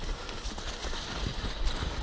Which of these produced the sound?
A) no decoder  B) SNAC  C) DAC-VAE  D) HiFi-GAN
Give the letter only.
A